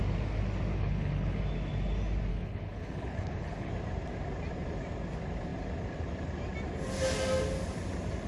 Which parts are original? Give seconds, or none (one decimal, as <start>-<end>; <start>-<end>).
0.0-0.7; 1.4-2.3; 3.7-8.3